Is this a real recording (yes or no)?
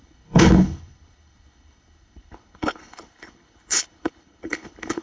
no